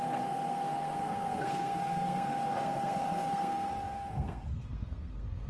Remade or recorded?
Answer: remade